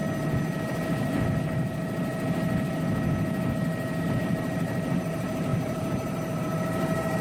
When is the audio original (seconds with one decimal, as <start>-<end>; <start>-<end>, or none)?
0.0-4.0